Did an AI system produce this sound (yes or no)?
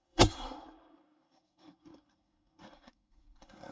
yes